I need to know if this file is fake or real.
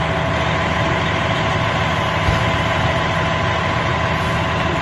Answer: real